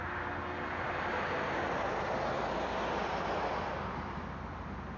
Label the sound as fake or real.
real